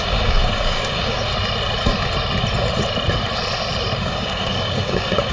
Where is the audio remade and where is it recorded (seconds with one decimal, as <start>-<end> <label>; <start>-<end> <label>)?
0.0-1.3 remade; 1.3-4.0 recorded; 4.0-5.3 remade